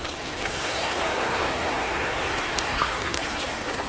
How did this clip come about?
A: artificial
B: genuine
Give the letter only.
A